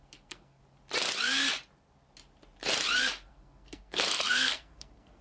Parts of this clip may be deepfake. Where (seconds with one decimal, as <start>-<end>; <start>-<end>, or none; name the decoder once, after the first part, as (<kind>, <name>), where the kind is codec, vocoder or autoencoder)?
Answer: 0.0-0.6 (codec, SNAC); 3.3-5.2